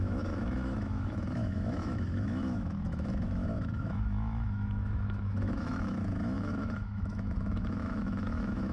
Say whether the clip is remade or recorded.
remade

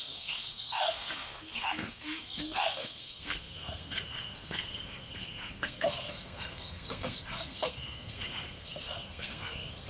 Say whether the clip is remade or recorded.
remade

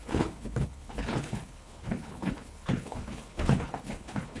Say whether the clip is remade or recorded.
remade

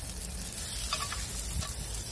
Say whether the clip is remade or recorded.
recorded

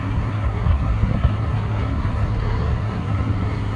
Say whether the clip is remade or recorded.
remade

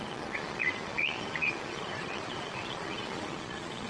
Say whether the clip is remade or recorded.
remade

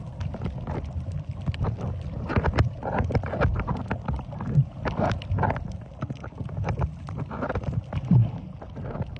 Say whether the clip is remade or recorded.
recorded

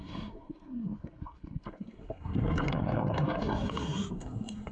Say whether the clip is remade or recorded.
remade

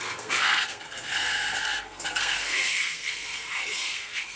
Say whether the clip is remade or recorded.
remade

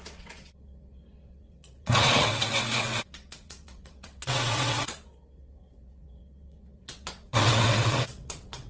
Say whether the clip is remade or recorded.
remade